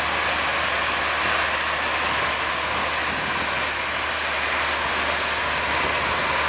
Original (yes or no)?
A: yes